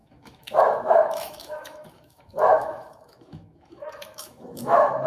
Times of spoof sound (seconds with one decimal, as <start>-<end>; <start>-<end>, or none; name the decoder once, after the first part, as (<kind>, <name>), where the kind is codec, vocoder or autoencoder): 0.0-5.1 (autoencoder, DAC-VAE)